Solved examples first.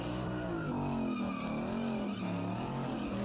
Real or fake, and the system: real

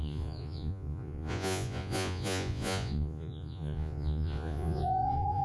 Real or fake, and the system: fake, vocoder, Vocos